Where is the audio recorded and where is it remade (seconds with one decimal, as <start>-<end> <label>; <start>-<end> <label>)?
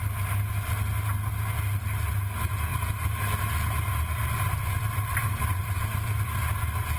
0.0-2.7 recorded; 2.7-3.3 remade; 3.3-5.2 recorded; 5.2-6.4 remade; 6.4-7.0 recorded